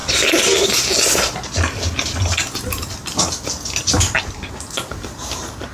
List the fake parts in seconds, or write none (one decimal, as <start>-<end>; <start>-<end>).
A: none